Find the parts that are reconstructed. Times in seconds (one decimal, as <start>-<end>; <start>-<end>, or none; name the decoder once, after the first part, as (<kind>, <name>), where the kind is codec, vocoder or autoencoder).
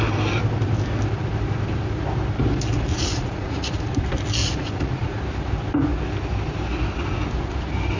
2.9-3.9 (vocoder, Vocos); 4.4-5.2